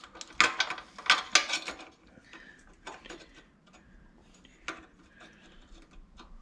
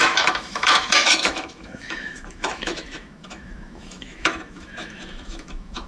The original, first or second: first